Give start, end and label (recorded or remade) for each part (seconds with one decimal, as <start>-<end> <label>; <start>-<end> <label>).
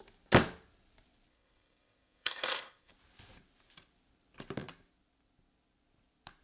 0.0-1.3 recorded; 1.3-2.9 remade; 2.9-6.4 recorded